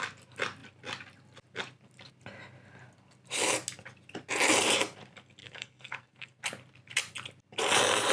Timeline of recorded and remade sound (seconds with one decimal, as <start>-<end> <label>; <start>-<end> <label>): 0.0-5.4 recorded; 5.4-6.4 remade; 6.4-8.1 recorded

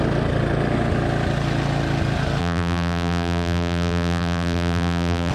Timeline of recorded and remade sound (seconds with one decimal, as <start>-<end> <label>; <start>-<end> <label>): 0.0-2.4 recorded; 2.4-5.3 remade

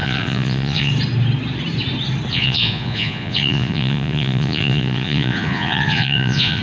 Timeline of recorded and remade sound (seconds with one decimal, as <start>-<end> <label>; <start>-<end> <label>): 0.0-0.9 remade; 0.9-2.3 recorded; 2.3-6.6 remade

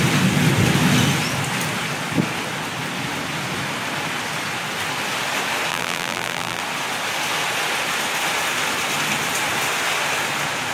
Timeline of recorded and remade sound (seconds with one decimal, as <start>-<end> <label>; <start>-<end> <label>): 0.0-5.7 recorded; 5.7-6.6 remade; 6.6-10.7 recorded